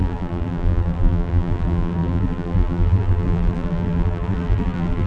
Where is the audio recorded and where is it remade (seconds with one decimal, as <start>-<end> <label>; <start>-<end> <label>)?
0.0-5.1 remade